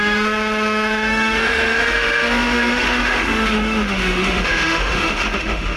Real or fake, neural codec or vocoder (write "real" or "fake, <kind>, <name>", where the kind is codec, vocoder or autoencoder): fake, autoencoder, DAC-VAE